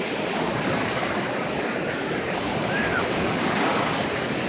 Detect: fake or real fake